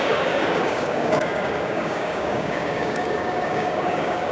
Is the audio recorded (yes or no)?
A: no